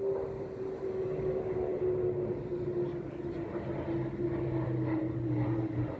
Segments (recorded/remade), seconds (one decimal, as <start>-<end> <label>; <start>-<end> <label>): 0.0-6.0 recorded